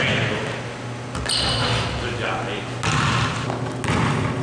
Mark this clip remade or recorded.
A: recorded